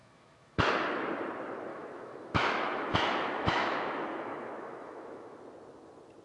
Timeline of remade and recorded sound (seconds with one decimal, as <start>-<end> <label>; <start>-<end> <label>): 0.0-0.7 remade; 0.7-1.7 recorded; 1.7-5.4 remade; 5.4-6.2 recorded